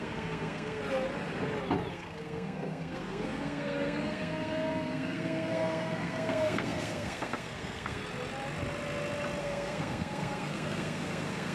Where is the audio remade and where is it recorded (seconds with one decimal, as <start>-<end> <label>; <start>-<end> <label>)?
0.0-0.8 remade; 0.8-1.9 recorded; 1.9-8.0 remade; 8.0-9.4 recorded; 9.4-11.5 remade

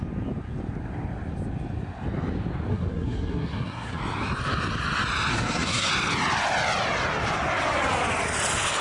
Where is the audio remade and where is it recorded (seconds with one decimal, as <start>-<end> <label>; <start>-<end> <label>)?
0.0-2.7 recorded; 2.7-4.0 remade; 4.0-5.3 recorded; 5.3-5.9 remade; 5.9-8.8 recorded

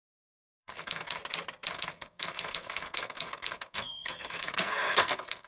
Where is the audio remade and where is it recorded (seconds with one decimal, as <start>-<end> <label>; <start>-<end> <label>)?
0.0-1.2 remade; 1.2-1.7 recorded; 1.7-5.5 remade

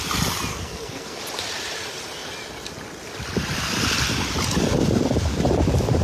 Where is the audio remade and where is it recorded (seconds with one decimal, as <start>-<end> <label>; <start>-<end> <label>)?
0.0-0.5 recorded; 0.5-1.2 remade; 1.2-6.0 recorded

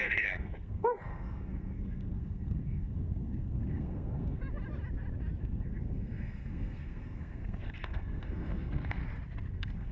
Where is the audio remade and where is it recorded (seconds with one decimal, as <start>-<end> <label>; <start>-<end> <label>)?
0.0-4.4 remade; 4.4-5.4 recorded; 5.4-9.0 remade; 9.0-9.5 recorded; 9.5-9.9 remade